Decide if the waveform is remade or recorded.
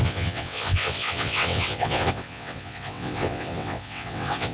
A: remade